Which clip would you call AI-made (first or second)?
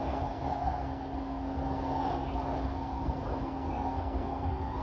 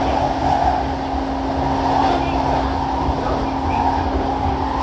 first